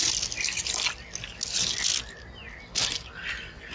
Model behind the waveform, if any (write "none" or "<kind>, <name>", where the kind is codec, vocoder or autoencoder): none